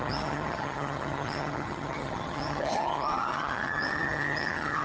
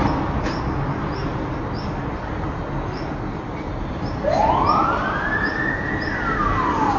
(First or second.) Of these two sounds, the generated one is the first